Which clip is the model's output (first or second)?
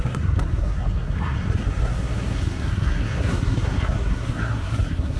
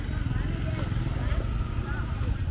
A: first